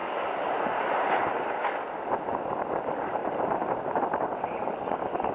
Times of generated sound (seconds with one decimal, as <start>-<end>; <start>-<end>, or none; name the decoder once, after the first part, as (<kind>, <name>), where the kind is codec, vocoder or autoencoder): 0.0-1.7 (vocoder, BigVGAN v2); 3.2-4.3